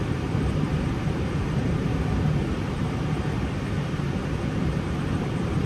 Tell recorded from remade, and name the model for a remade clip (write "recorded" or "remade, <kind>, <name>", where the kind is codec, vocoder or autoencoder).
remade, vocoder, BigVGAN v2